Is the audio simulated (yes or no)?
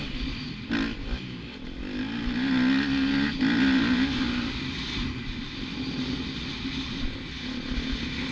no